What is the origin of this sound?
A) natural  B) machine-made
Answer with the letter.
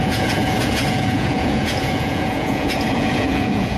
B